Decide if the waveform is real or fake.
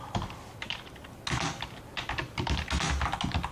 real